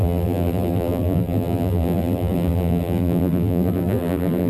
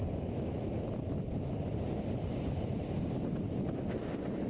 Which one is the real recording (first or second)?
second